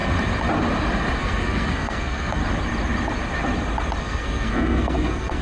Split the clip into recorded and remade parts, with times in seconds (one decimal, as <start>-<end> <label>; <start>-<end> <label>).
0.0-1.2 recorded; 1.2-2.4 remade; 2.4-4.0 recorded; 4.0-5.4 remade